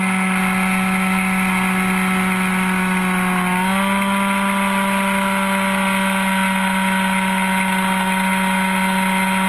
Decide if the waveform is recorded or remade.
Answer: recorded